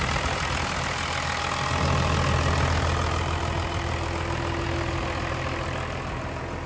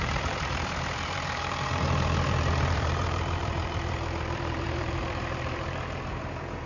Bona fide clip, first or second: first